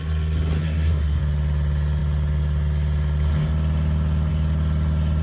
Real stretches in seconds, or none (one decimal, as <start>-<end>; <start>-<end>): 0.0-0.6; 1.2-5.2